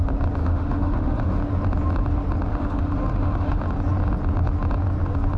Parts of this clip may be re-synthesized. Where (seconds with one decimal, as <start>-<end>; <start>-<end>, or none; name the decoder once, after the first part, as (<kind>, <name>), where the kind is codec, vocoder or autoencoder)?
0.4-1.4 (autoencoder, DAC-VAE); 2.5-3.6